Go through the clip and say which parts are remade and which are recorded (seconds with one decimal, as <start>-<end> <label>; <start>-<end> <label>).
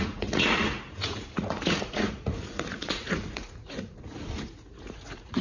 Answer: 0.0-5.4 remade